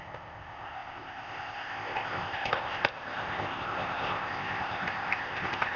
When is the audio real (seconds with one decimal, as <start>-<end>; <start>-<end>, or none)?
none